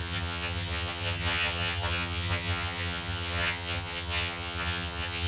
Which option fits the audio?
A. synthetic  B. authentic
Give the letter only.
A